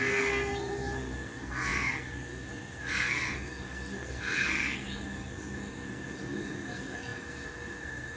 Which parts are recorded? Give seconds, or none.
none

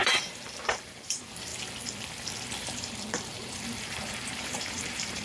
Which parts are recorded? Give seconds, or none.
1.5-2.6